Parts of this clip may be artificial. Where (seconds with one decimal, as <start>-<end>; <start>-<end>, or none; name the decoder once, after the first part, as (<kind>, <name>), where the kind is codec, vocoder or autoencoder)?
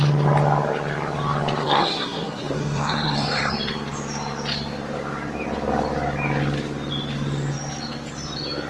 1.6-3.5 (codec, SNAC)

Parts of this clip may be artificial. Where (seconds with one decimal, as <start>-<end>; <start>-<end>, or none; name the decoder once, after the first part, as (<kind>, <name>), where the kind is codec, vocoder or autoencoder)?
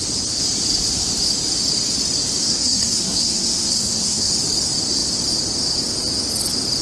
2.4-4.3 (codec, SNAC)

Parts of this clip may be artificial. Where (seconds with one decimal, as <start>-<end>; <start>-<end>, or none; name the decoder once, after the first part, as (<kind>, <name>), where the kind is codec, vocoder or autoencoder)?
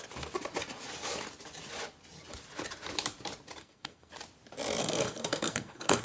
3.6-4.1 (codec, SNAC); 4.8-6.0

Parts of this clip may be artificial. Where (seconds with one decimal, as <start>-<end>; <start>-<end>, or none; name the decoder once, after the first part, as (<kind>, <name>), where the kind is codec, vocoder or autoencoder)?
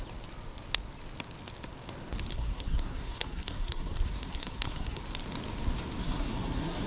2.3-5.0 (codec, SNAC); 6.0-6.9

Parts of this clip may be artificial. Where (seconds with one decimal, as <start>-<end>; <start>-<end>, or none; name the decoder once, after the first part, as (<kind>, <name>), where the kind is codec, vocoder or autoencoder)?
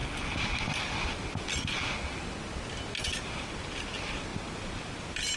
none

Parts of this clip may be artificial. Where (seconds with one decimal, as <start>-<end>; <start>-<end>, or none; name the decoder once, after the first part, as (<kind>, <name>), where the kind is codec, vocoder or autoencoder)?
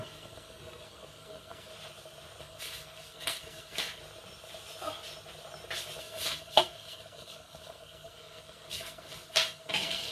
0.0-1.7 (codec, SNAC); 2.4-4.0; 6.0-10.1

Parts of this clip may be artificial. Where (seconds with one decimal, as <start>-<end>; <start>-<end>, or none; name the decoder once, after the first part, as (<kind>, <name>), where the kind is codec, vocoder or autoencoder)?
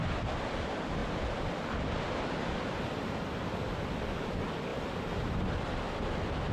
none